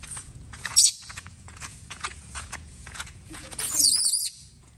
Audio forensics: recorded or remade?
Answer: remade